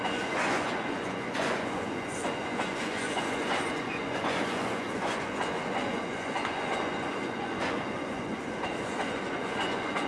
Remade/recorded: remade